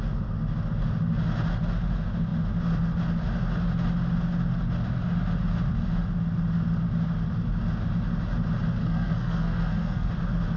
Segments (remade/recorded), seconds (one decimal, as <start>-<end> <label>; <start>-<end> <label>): 0.0-8.8 recorded; 8.8-10.1 remade; 10.1-10.6 recorded